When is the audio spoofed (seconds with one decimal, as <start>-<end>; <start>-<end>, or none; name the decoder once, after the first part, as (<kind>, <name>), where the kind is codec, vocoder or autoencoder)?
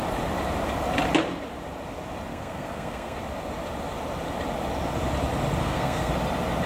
2.3-3.2 (codec, SNAC); 5.6-6.1